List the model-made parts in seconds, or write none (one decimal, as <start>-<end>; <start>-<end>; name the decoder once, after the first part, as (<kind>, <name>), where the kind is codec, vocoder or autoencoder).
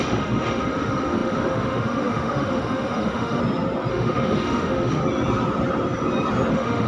0.0-3.4 (autoencoder, DAC-VAE); 3.9-5.0; 6.5-6.9